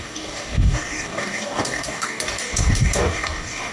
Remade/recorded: remade